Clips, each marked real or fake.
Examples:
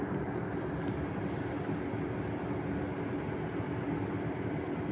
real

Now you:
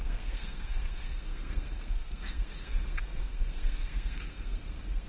fake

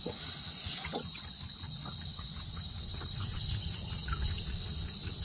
fake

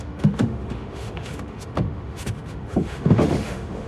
fake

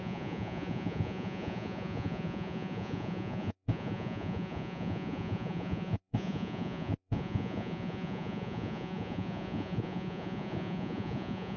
fake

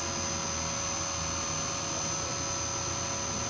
real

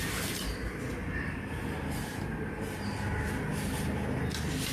real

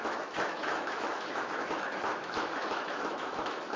fake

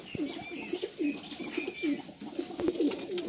real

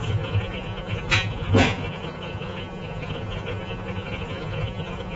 fake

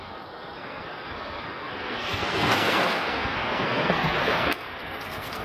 fake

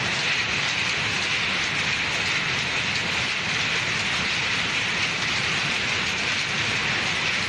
real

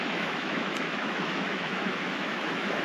fake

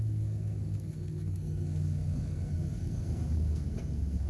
fake